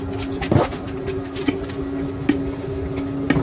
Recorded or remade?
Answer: recorded